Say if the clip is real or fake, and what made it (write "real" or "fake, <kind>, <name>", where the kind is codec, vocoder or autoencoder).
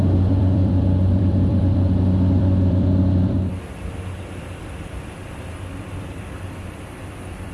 fake, vocoder, BigVGAN v2